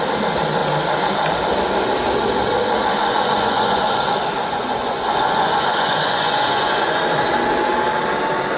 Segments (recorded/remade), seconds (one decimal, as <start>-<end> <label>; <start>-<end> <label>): 0.0-3.0 recorded; 3.0-3.8 remade; 3.8-4.4 recorded; 4.4-7.0 remade; 7.0-8.6 recorded